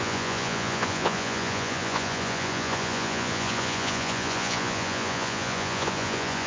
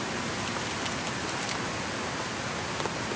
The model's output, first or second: first